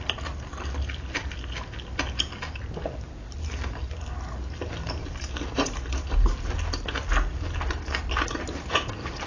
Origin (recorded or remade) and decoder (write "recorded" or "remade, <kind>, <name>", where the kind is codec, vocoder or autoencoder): recorded